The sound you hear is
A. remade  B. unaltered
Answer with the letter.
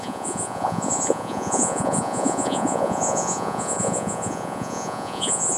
A